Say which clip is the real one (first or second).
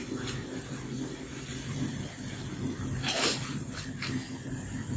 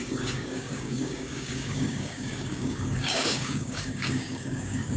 first